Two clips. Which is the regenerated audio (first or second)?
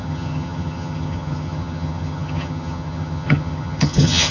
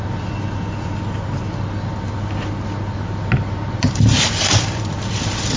first